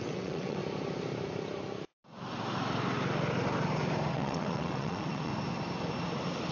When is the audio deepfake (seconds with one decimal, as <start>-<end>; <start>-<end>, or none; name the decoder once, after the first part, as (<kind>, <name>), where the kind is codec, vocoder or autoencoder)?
0.0-0.6 (vocoder, WaveNeXt); 4.1-5.3